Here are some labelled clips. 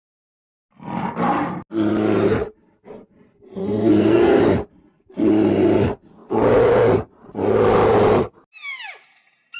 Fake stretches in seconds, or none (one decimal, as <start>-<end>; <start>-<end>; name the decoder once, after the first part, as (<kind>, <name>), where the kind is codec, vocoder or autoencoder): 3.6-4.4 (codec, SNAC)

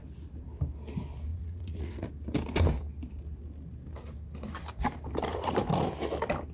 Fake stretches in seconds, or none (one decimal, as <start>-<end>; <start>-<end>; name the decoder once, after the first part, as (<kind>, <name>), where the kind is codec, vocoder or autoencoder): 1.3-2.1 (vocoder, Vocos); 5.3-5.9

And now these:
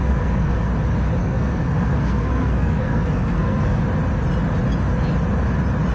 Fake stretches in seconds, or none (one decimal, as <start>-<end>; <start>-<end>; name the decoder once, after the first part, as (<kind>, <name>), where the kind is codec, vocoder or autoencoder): 0.0-0.7 (codec, SNAC); 1.2-3.8

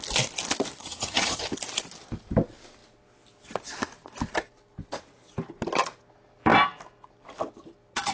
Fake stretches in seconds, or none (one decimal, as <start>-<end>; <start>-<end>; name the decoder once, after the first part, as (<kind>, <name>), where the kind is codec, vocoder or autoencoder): 0.8-1.4 (vocoder, HiFi-GAN)

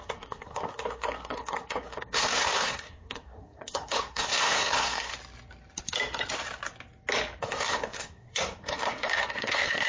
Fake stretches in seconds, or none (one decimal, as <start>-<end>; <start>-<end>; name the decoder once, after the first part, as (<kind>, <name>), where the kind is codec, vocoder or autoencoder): 0.0-5.1 (codec, SNAC); 7.4-9.9